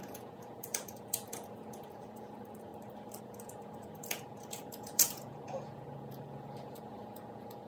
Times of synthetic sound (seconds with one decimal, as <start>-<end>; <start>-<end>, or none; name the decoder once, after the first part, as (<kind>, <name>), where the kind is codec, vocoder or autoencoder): 0.0-2.7 (vocoder, Vocos); 3.2-7.7